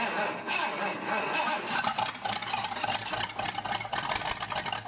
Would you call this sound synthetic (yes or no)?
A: no